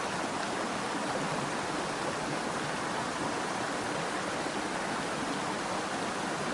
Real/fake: real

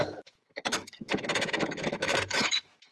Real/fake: fake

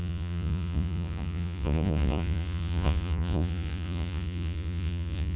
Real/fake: fake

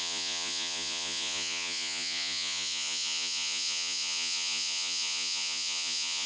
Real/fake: fake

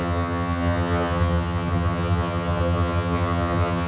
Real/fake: fake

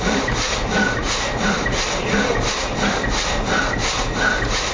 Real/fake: fake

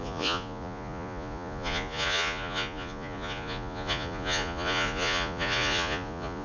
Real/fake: fake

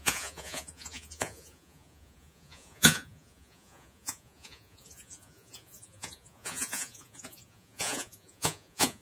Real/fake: fake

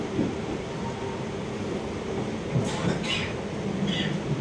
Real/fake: real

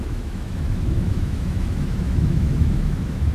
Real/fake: fake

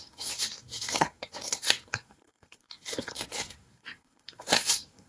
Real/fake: fake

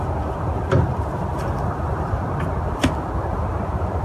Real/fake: real